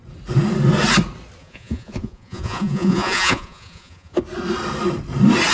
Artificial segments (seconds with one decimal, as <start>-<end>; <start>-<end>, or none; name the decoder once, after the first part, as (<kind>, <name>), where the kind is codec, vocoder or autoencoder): 1.4-4.2 (vocoder, Vocos)